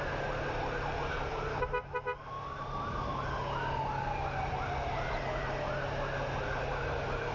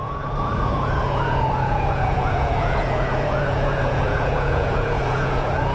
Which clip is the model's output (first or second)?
second